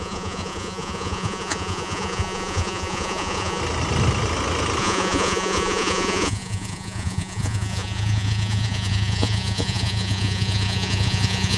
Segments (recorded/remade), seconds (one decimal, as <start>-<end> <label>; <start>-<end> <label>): 0.0-3.6 remade; 3.6-4.8 recorded; 4.8-11.6 remade